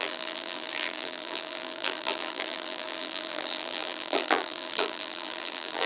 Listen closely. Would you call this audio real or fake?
fake